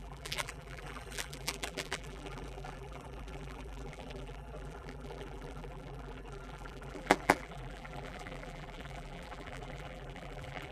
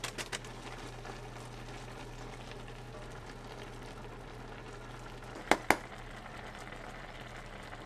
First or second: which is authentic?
second